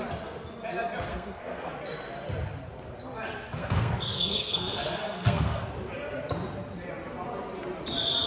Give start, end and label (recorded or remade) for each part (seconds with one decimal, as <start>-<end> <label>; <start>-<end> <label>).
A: 0.0-1.1 recorded; 1.1-1.7 remade; 1.7-3.6 recorded; 3.6-5.6 remade; 5.6-8.3 recorded